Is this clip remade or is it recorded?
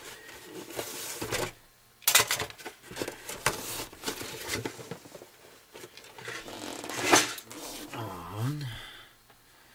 recorded